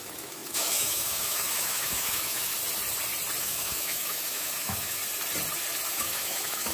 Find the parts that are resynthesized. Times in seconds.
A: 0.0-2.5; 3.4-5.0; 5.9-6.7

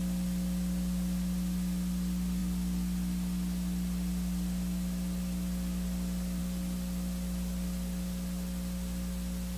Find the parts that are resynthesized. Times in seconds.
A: none

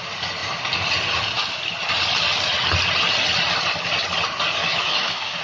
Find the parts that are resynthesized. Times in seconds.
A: 4.6-5.4

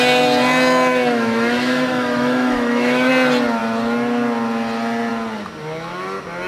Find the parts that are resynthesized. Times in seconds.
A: 0.9-3.1